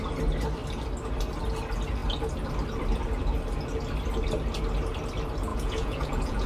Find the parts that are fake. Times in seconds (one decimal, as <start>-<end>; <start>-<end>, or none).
5.5-6.5